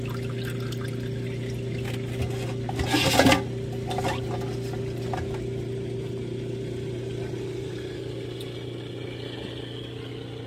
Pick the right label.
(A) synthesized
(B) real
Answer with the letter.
B